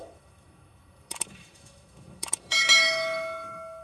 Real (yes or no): no